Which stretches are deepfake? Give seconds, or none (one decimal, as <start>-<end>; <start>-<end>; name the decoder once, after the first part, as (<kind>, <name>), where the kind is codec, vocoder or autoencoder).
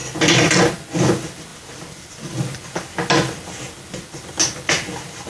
none